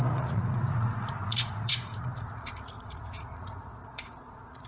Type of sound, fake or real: fake